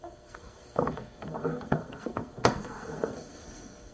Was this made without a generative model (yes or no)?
no